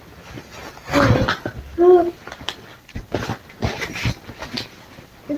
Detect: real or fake real